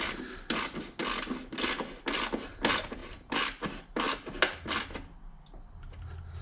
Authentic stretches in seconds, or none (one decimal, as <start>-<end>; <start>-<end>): 0.0-6.4